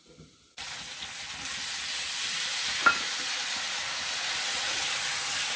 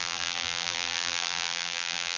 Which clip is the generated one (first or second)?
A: second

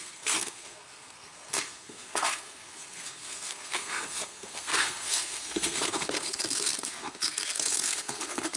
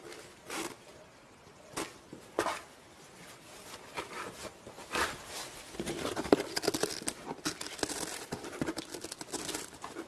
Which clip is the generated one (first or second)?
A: first